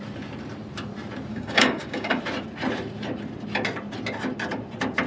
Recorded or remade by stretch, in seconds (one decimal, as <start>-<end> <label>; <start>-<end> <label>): 0.0-1.3 recorded; 1.3-2.2 remade; 2.2-5.1 recorded